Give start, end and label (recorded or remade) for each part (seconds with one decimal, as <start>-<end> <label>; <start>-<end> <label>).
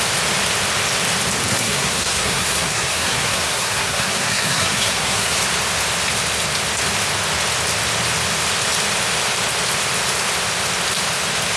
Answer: 0.0-1.5 recorded; 1.5-5.4 remade; 5.4-11.6 recorded